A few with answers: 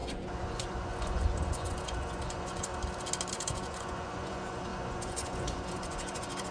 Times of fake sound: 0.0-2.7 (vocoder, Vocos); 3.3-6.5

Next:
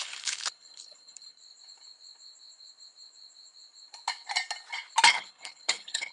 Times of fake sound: 0.0-1.4 (codec, HILCodec); 5.1-6.1

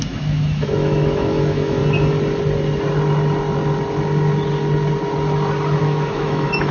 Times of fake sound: 0.0-1.8 (autoencoder, DAC-VAE); 5.8-6.7